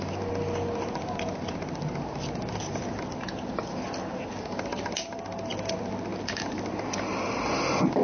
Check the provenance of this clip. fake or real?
real